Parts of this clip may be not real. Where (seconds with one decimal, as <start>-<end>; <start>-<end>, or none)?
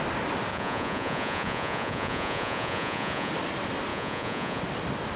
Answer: 0.5-3.3; 3.9-4.6